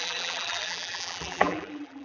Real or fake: fake